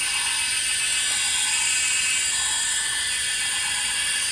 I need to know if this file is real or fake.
fake